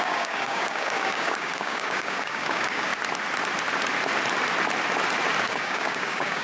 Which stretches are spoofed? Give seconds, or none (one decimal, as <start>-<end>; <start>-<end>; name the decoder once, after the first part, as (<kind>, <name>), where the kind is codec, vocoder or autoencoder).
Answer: 0.0-2.9 (codec, DAC); 5.4-6.4